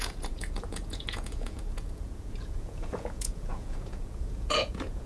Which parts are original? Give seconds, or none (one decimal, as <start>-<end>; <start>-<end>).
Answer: none